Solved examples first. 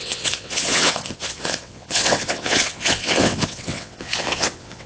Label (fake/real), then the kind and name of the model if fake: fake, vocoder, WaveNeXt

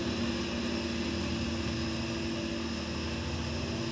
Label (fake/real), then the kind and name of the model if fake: real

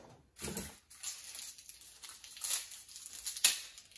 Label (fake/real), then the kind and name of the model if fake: real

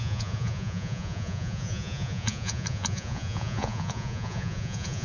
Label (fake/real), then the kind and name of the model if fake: fake, vocoder, Vocos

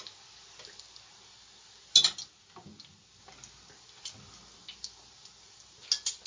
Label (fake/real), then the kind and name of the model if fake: real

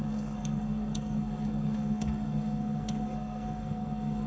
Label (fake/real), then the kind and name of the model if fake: fake, codec, SNAC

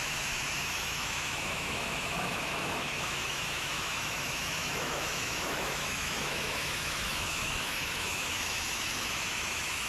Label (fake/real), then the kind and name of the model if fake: fake, autoencoder, DAC-VAE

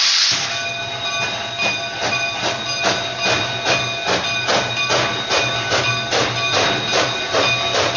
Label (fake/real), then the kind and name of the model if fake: real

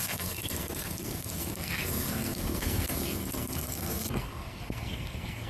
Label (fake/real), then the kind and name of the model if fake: fake, codec, SNAC